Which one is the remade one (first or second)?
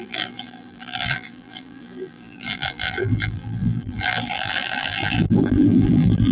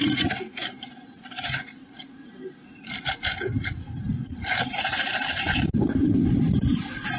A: first